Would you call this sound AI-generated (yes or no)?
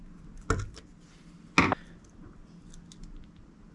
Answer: no